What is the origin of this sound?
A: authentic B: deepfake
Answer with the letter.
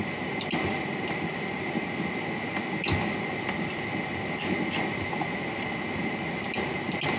A